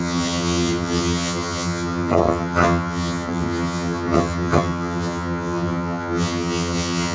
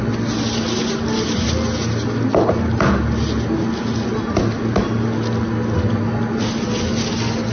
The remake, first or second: first